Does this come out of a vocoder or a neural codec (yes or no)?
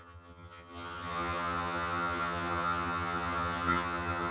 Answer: yes